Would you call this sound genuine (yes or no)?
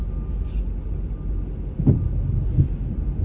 yes